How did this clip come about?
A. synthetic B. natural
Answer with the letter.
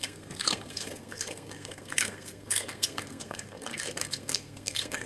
A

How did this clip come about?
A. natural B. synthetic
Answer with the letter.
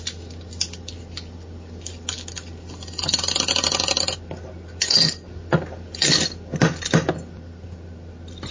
A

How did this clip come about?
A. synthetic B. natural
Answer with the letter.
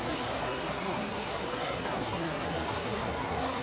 A